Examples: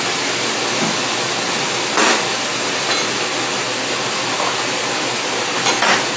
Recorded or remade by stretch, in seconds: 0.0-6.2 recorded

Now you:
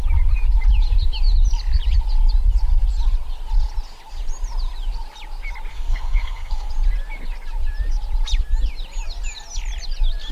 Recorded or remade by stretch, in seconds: 0.0-5.7 recorded; 5.7-6.7 remade; 6.7-10.3 recorded

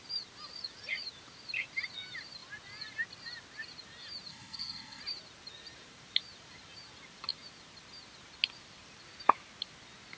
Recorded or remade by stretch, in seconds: 0.0-4.3 recorded; 4.3-5.0 remade; 5.0-10.2 recorded

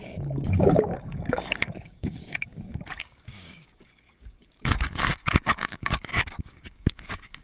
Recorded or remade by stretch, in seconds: 0.0-7.4 remade